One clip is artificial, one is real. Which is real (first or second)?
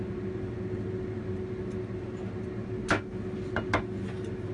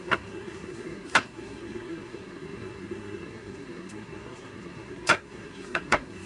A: first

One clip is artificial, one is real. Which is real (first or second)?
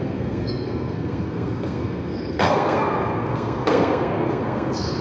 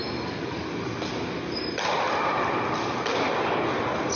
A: second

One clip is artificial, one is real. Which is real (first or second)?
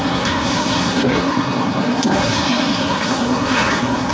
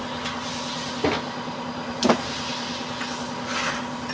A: second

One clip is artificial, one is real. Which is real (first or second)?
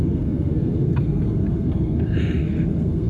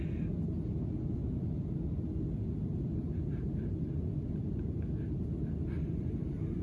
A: second